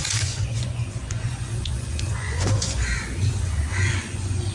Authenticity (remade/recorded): remade